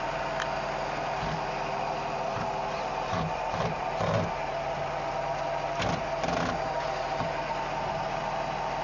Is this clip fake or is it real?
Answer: real